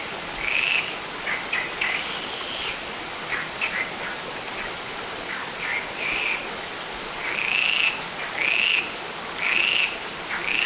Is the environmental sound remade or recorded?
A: recorded